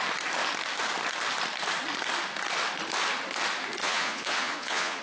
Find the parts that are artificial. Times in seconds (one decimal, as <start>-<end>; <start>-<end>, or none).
3.8-5.0